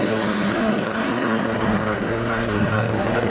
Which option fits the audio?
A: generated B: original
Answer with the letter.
A